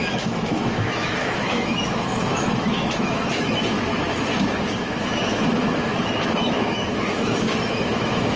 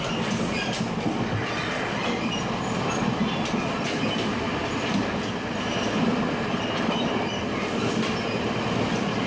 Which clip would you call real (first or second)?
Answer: second